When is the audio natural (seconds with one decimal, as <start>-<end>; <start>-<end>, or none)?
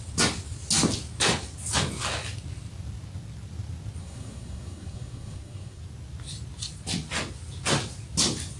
0.0-4.0; 5.8-8.6